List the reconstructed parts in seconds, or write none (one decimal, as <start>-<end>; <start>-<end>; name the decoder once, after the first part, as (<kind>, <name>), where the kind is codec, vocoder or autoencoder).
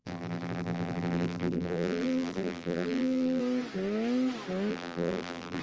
0.0-3.4 (vocoder, BigVGAN v2); 4.7-5.6